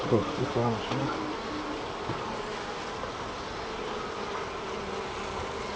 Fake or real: real